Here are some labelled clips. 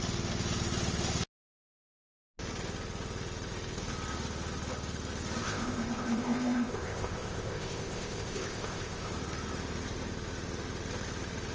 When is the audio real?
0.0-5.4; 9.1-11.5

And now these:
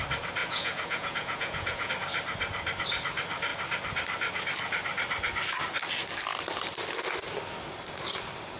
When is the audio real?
0.0-0.4; 1.9-8.6

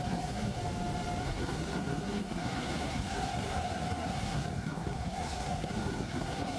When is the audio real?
0.6-1.2

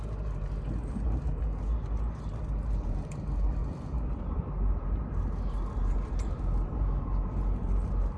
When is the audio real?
none

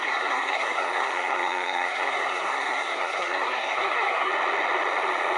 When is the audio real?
4.3-5.4

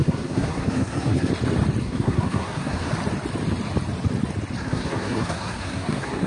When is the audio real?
1.3-1.8; 2.9-4.6